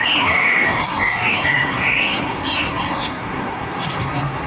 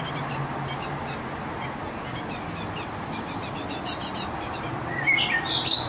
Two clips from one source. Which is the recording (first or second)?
second